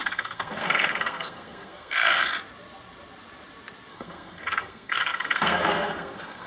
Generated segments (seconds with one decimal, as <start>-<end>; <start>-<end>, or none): 0.0-2.3; 3.9-6.5